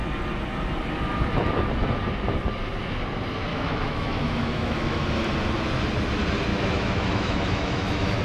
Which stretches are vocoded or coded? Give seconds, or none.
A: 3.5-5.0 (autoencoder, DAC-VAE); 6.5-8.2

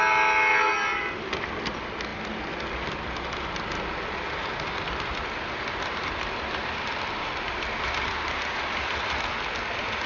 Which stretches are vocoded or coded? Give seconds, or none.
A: none

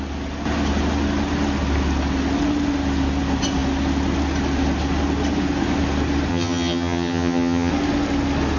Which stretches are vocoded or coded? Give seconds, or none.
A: 6.3-7.7 (vocoder, HiFi-GAN)

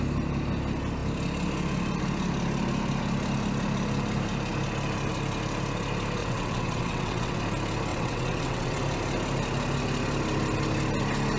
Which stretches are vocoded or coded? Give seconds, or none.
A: 6.2-7.4 (vocoder, WaveNeXt); 7.9-8.8

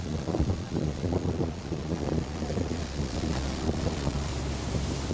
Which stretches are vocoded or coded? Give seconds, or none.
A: 0.0-4.3 (vocoder, Vocos)

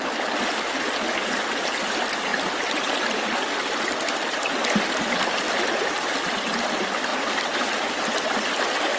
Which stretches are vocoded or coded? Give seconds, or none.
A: none

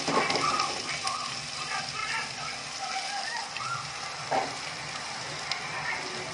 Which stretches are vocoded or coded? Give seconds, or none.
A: none

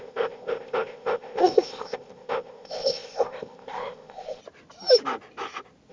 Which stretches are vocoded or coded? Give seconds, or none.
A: 0.0-4.4 (codec, ZipCodec)